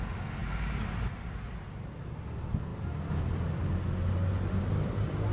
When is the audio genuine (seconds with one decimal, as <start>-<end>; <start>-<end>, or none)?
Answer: 0.0-5.3